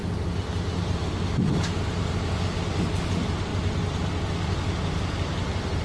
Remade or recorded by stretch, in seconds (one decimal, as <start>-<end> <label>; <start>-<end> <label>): 0.0-5.8 recorded